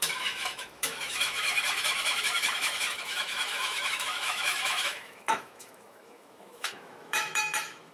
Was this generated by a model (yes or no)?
yes